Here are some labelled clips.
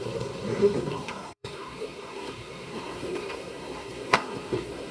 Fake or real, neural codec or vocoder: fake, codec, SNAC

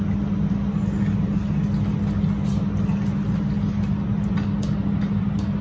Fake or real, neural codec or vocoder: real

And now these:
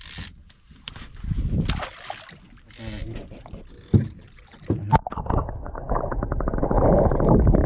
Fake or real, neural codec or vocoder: real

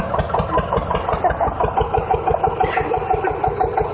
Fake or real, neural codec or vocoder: real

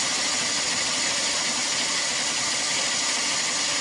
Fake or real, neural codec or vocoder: real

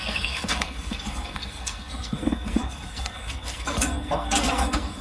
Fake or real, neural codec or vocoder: fake, codec, SNAC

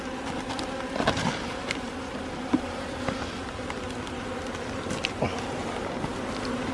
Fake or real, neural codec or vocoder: real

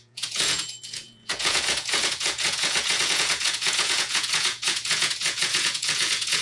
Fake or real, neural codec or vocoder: fake, vocoder, Vocos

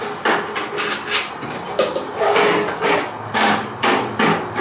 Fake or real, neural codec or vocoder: real